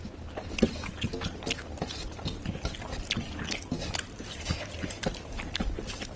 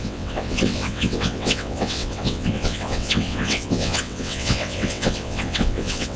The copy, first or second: second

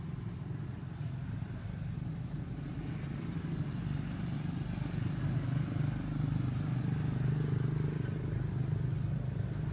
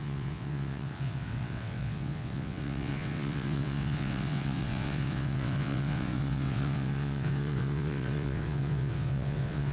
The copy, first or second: second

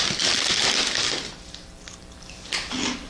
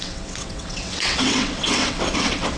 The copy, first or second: second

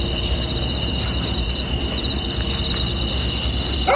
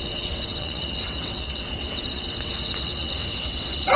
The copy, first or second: second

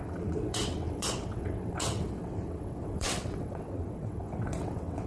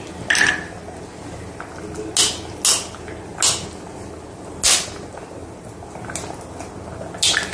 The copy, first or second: first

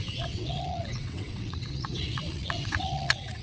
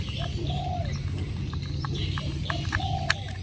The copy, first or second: first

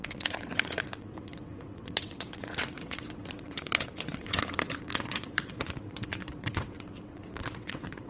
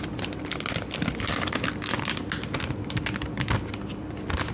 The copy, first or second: first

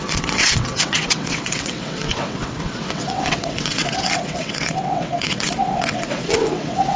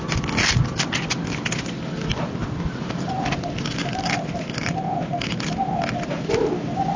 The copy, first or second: first